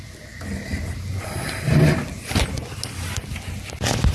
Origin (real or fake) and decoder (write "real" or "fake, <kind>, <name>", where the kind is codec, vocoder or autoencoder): real